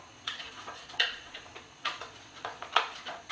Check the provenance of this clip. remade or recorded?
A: remade